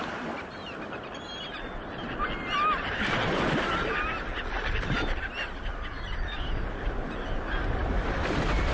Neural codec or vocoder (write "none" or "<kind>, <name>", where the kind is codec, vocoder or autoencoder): none